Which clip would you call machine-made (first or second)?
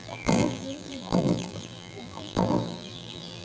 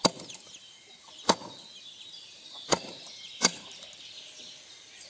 first